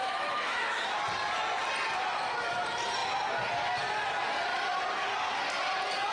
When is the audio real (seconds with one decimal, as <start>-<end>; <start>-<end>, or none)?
1.0-6.1